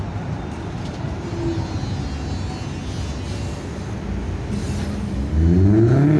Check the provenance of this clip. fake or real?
real